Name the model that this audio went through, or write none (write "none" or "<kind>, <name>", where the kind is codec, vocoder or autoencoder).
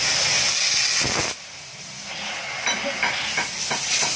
none